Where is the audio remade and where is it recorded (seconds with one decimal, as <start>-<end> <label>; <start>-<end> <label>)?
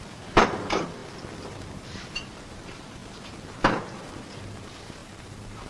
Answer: 0.0-1.0 remade; 1.0-1.5 recorded; 1.5-3.0 remade; 3.0-3.5 recorded; 3.5-5.7 remade